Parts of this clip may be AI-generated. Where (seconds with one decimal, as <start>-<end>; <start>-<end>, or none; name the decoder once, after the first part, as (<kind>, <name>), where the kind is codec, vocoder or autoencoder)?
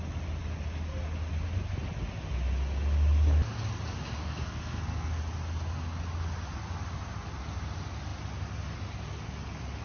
4.2-5.1 (codec, SNAC)